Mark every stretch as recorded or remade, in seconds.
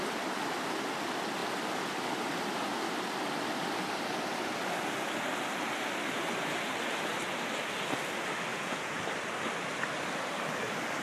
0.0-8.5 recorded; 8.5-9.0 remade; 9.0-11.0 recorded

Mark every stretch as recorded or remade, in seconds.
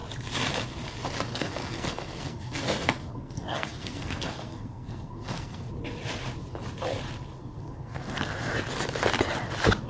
0.0-1.3 recorded; 1.3-5.7 remade; 5.7-7.4 recorded; 7.4-8.3 remade; 8.3-9.9 recorded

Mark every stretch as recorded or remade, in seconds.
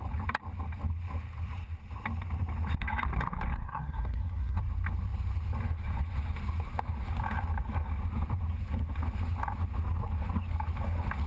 0.0-3.5 recorded; 3.5-4.6 remade; 4.6-11.3 recorded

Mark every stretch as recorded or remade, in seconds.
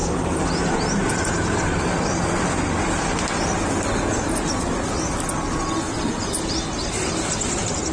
0.0-7.9 recorded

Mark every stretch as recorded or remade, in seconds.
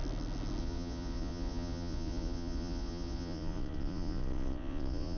0.0-0.6 recorded; 0.6-5.2 remade